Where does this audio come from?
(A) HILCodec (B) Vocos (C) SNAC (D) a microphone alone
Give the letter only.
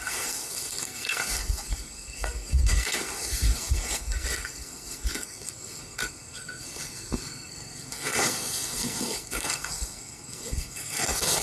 C